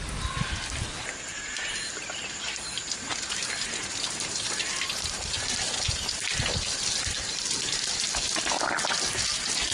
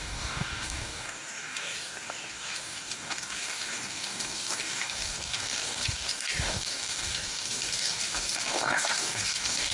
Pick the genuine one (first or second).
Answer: first